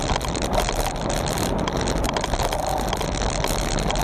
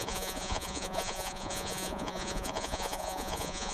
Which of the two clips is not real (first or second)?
second